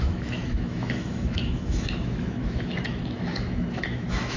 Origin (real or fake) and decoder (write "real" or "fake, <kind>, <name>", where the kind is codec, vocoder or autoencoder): fake, autoencoder, DAC-VAE